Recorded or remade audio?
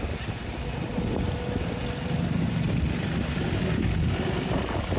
recorded